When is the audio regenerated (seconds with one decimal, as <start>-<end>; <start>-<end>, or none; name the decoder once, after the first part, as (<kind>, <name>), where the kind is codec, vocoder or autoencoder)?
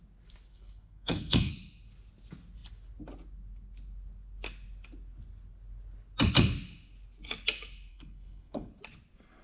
0.5-1.5 (codec, SNAC); 7.9-8.7